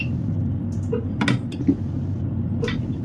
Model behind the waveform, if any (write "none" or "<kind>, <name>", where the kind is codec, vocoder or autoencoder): none